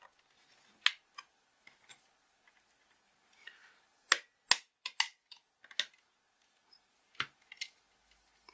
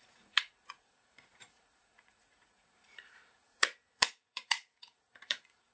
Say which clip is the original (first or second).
first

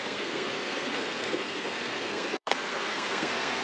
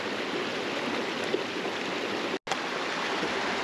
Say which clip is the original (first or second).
second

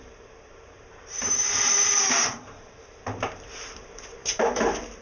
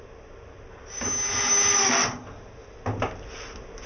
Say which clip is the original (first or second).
second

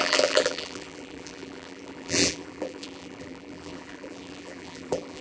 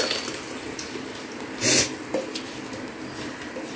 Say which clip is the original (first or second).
second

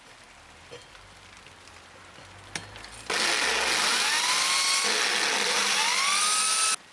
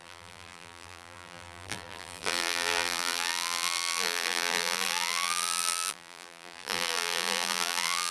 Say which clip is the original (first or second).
first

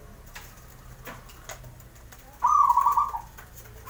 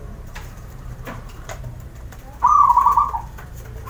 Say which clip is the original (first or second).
first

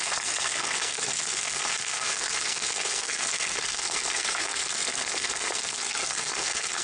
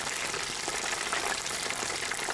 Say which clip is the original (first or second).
second